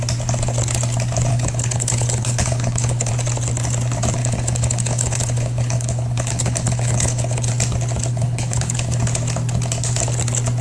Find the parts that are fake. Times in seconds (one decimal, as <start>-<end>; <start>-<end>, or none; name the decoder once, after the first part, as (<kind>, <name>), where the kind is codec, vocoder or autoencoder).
1.3-3.1 (codec, HILCodec); 4.2-7.5; 8.1-9.0